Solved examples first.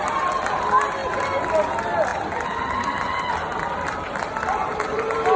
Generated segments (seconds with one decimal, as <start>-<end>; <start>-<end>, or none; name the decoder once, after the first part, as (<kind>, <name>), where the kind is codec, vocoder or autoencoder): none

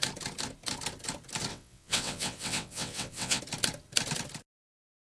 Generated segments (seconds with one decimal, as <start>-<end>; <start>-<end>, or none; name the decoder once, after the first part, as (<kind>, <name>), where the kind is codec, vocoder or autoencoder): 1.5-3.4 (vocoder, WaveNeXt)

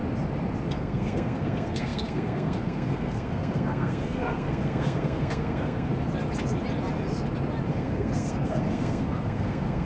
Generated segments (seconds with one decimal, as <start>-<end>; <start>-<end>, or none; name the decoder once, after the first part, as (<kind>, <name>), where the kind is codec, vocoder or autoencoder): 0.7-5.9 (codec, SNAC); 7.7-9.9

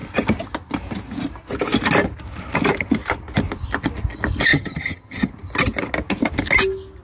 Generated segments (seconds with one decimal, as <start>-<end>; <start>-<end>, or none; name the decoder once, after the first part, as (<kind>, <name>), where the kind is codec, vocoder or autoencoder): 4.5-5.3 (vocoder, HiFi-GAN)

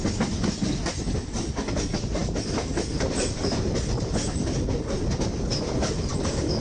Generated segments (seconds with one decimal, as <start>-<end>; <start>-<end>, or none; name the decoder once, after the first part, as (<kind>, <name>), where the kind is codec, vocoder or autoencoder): none

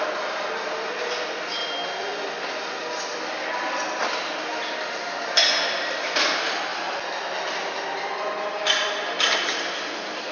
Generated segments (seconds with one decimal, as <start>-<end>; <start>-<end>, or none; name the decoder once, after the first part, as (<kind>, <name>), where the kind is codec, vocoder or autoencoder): none

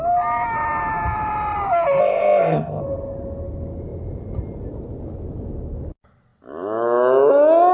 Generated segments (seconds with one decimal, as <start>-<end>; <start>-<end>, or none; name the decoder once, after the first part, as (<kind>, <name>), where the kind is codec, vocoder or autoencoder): 2.0-2.8 (codec, ZipCodec)